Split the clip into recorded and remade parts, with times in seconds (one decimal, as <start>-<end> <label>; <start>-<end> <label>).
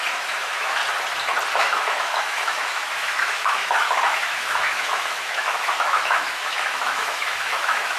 0.0-0.8 remade; 0.8-1.6 recorded; 1.6-8.0 remade